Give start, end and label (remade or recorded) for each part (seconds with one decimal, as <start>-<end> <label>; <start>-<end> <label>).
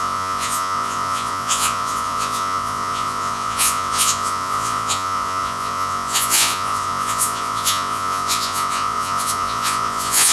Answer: 0.0-10.3 remade